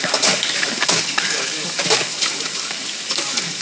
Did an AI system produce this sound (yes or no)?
yes